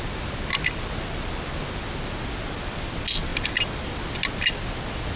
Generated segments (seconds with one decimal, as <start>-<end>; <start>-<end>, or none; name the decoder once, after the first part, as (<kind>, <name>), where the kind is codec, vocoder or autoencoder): none